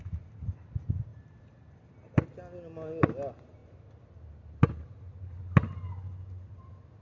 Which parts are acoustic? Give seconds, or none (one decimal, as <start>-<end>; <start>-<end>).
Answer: 0.0-7.0